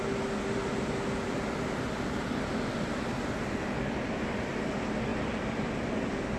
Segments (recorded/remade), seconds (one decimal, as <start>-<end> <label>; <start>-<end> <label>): 0.0-6.4 recorded

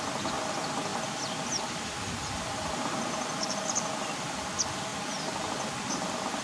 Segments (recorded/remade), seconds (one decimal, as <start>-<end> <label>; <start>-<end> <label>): 0.0-6.4 recorded